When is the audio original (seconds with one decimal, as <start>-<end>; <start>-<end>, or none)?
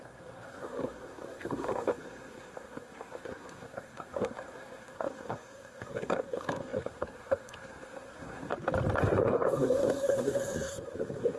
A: 8.5-9.0